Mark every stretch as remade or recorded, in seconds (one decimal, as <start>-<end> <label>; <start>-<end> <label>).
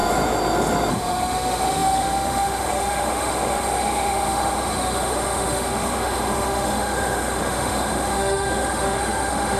0.0-0.9 recorded; 0.9-9.6 remade